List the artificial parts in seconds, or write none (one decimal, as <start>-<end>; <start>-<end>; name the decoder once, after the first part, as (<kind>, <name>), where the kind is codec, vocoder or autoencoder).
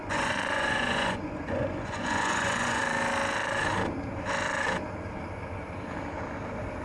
0.0-2.8 (vocoder, Vocos)